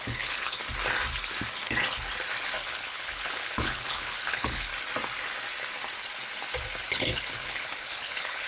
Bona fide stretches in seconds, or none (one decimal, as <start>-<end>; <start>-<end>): 0.6-2.4; 4.7-6.9